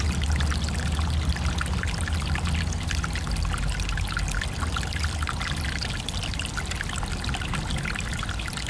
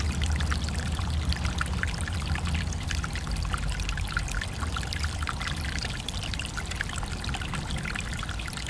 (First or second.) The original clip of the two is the first